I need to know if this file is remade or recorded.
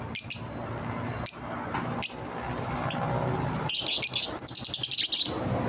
recorded